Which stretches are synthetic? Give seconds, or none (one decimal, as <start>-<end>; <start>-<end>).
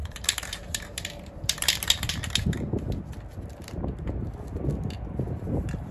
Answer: 0.0-2.1